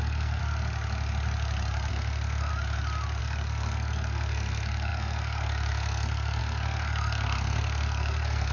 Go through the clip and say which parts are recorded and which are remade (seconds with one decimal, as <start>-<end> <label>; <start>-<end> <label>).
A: 0.0-0.4 remade; 0.4-1.9 recorded; 1.9-2.5 remade; 2.5-3.2 recorded; 3.2-8.5 remade